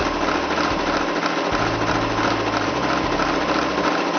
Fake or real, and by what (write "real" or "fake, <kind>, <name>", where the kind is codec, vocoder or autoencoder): real